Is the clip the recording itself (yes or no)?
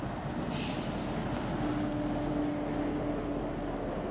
yes